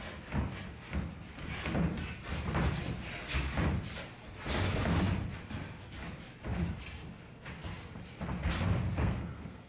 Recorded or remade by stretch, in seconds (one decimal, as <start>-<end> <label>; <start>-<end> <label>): 0.0-8.9 recorded; 8.9-9.7 remade

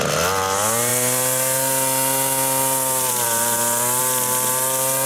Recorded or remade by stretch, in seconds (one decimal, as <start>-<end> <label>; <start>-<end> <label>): 0.0-5.1 recorded

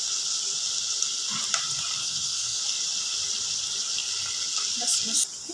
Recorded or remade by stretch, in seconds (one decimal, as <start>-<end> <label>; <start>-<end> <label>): 0.0-2.0 recorded; 2.0-2.6 remade; 2.6-5.5 recorded